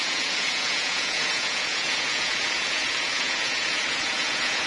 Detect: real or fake fake